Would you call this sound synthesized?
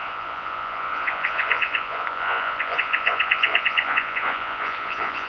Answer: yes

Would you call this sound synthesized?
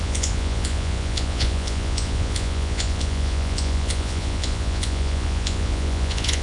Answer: yes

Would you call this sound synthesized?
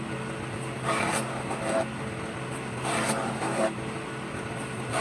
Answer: no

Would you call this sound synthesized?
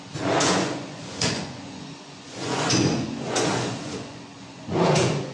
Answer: yes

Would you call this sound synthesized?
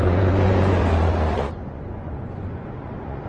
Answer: yes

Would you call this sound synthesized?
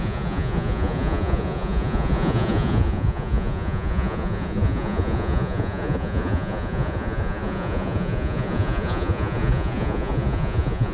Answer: yes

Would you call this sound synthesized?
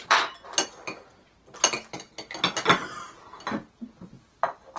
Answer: no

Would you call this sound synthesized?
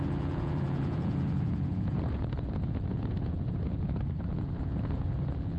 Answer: yes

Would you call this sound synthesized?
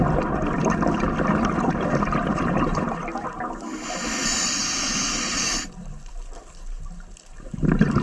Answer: no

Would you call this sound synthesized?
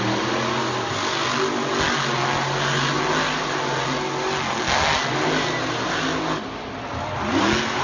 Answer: no